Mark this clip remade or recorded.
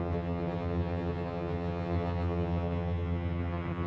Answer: remade